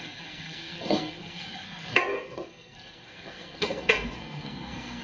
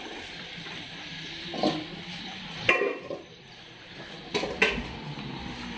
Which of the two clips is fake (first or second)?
first